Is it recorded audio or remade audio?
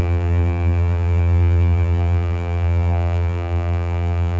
remade